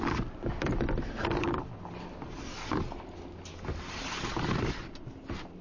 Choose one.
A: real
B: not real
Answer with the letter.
A